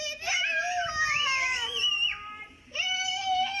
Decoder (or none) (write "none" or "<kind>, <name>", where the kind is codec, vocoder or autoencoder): none